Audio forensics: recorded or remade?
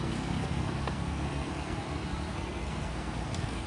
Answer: remade